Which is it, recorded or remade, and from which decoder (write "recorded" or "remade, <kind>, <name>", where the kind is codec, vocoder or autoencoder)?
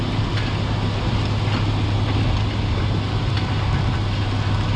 recorded